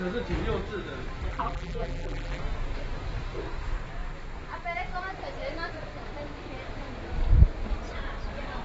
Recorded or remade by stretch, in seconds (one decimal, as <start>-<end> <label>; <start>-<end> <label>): 0.0-1.3 recorded; 1.3-2.4 remade; 2.4-8.6 recorded